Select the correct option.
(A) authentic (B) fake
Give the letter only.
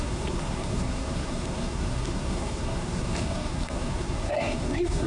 B